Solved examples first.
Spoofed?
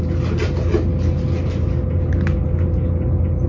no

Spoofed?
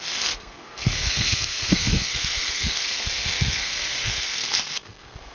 yes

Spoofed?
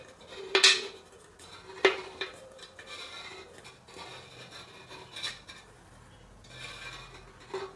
no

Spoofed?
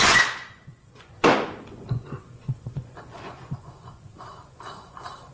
yes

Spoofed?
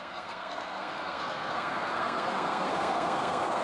yes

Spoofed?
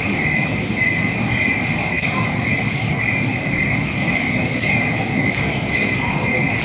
yes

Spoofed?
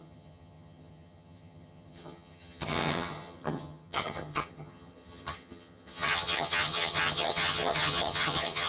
yes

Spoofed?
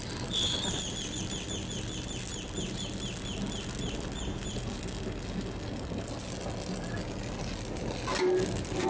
no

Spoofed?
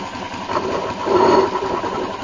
no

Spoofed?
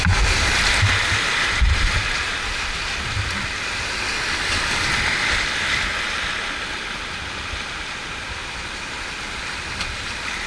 no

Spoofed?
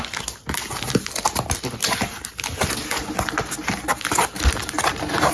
no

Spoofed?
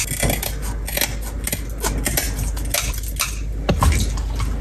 no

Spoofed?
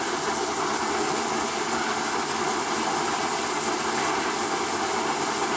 no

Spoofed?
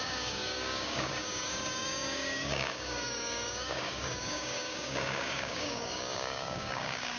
yes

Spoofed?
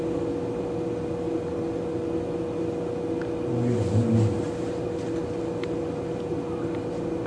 no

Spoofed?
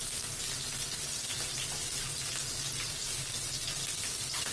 no